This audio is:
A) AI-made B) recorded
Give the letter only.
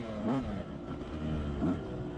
B